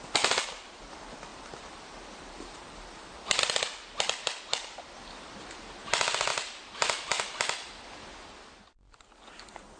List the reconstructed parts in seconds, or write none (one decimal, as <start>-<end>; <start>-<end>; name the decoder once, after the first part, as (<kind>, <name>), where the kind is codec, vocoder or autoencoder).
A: 1.3-3.4 (vocoder, BigVGAN v2); 6.3-7.2